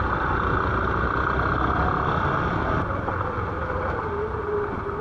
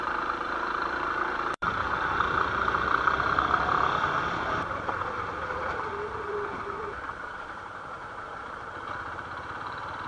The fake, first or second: second